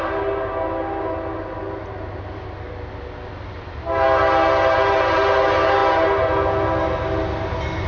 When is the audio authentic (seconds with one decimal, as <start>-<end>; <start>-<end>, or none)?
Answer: 0.0-7.9